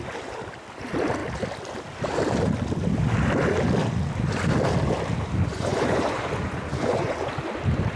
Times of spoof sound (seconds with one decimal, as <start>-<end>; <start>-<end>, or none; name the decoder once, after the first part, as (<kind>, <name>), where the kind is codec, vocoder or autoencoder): 5.5-7.3 (vocoder, Vocos)